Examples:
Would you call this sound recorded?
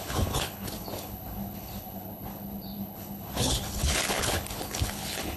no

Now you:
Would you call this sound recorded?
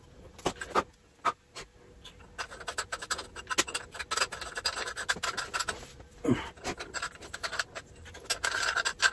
yes